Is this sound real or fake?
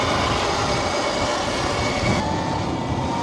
real